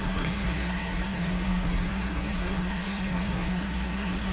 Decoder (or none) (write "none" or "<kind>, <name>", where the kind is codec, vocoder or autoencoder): codec, SNAC